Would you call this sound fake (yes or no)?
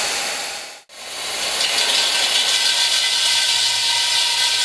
no